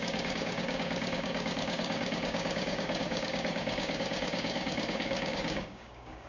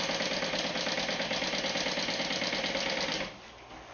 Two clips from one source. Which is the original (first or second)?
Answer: second